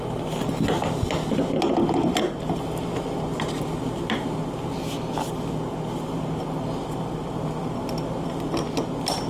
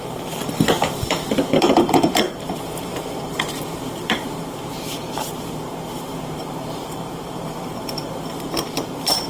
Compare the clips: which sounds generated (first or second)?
second